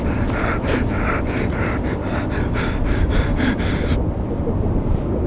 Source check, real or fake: fake